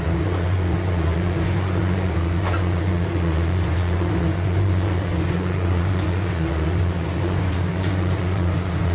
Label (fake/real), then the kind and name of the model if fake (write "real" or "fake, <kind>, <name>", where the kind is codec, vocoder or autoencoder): fake, vocoder, Vocos